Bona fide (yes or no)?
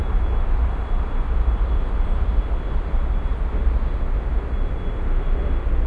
yes